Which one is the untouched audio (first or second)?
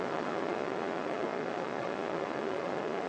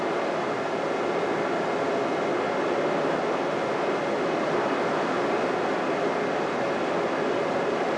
second